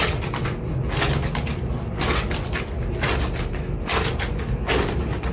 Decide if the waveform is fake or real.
real